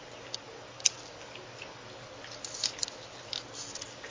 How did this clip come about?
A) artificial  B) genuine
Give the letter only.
B